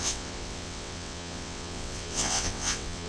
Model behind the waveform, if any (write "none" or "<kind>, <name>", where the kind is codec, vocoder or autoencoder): vocoder, WaveNeXt